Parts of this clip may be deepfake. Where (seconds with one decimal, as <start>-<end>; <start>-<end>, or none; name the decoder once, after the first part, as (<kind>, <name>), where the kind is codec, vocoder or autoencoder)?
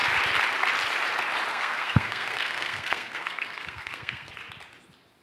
1.5-4.3 (codec, SNAC)